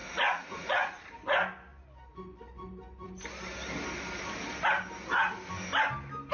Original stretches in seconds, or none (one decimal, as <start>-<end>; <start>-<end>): 1.0-6.3